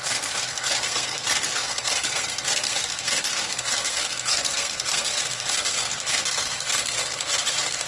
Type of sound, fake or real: fake